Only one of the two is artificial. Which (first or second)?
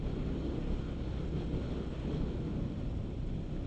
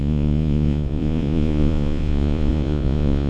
second